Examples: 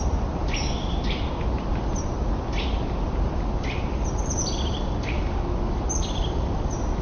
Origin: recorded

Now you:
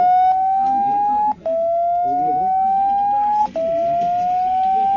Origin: recorded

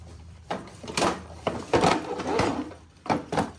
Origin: remade